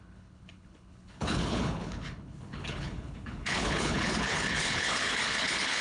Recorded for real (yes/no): no